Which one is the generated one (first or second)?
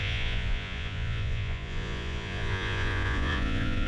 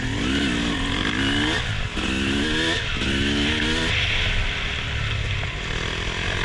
first